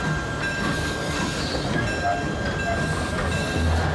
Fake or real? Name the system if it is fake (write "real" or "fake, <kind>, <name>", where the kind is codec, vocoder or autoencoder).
real